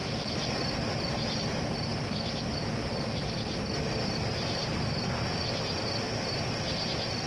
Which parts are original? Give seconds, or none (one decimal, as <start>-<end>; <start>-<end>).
0.0-7.3